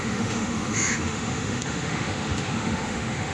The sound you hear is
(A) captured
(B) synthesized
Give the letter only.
B